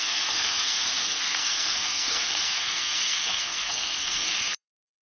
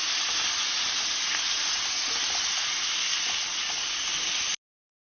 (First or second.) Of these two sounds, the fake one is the first